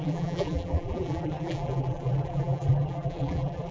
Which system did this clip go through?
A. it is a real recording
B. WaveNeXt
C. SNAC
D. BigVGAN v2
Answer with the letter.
D